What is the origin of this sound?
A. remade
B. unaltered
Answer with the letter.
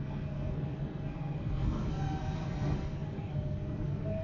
A